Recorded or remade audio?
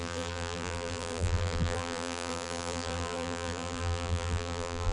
remade